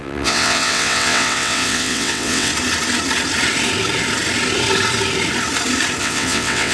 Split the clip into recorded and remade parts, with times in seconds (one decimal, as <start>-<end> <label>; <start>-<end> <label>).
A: 0.0-2.5 remade; 2.5-6.0 recorded; 6.0-6.7 remade

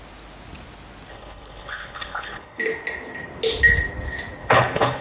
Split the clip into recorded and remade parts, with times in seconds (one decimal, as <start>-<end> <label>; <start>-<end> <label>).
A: 0.0-1.1 recorded; 1.1-2.6 remade; 2.6-4.4 recorded; 4.4-5.0 remade

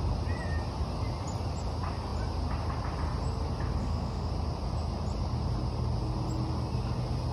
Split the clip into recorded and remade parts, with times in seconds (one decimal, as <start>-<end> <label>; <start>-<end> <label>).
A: 0.0-3.8 recorded; 3.8-4.3 remade; 4.3-7.3 recorded

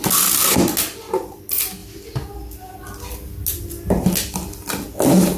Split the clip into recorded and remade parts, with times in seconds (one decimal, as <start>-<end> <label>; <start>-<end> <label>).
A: 0.0-5.4 recorded

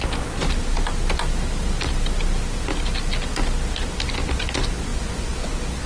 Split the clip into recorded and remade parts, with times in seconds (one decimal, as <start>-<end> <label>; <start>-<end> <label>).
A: 0.0-4.9 recorded; 4.9-5.5 remade; 5.5-5.9 recorded

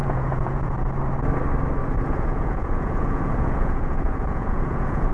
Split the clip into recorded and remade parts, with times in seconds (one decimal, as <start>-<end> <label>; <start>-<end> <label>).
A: 0.0-1.0 remade; 1.0-1.8 recorded; 1.8-5.1 remade

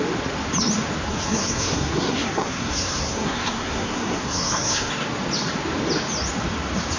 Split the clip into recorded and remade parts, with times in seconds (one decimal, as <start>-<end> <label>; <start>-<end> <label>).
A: 0.0-1.1 recorded; 1.1-4.9 remade; 4.9-7.0 recorded

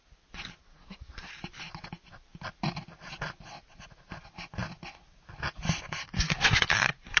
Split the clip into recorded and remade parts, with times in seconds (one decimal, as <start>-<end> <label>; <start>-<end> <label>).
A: 0.0-0.6 recorded; 0.6-1.3 remade; 1.3-6.0 recorded; 6.0-7.2 remade